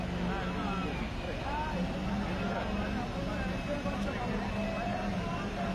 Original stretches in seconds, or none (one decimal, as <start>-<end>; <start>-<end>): 0.0-5.7